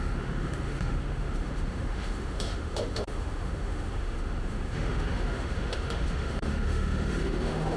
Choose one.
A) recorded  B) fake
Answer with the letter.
B